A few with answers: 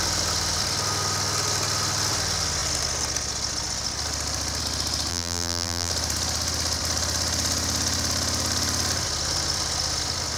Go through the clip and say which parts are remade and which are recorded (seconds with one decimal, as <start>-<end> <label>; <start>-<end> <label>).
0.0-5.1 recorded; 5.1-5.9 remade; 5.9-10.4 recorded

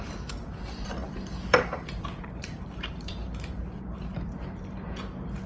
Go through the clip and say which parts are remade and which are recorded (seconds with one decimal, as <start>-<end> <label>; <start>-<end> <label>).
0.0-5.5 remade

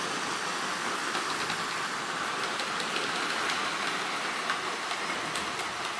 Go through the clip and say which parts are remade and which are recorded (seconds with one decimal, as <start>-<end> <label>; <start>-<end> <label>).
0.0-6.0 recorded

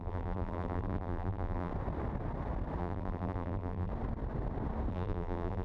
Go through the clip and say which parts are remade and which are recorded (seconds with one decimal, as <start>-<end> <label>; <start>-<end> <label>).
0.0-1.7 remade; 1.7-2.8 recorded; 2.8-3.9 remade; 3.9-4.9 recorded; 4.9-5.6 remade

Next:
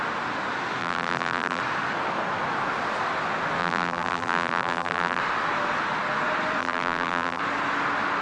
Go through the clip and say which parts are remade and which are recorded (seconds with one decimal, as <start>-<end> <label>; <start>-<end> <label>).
0.0-0.8 recorded; 0.8-1.6 remade; 1.6-3.6 recorded; 3.6-5.2 remade; 5.2-6.6 recorded; 6.6-7.4 remade; 7.4-8.2 recorded

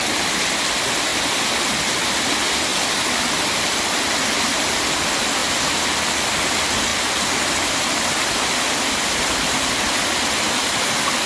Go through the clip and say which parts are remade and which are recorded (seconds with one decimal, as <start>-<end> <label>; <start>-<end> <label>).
0.0-2.7 recorded; 2.7-4.6 remade; 4.6-5.4 recorded; 5.4-6.0 remade; 6.0-6.9 recorded; 6.9-10.9 remade; 10.9-11.3 recorded